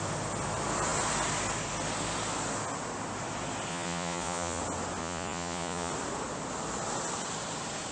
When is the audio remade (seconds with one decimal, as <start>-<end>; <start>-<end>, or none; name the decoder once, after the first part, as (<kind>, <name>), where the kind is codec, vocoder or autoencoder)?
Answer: 3.7-4.6 (vocoder, Vocos); 5.0-5.9